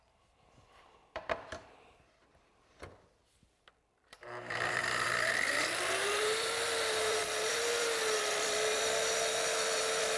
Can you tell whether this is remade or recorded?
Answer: remade